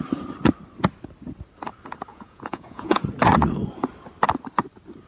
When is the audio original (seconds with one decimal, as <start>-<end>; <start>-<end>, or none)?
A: 0.0-2.1; 3.0-5.1